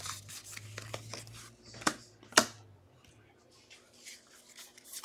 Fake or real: real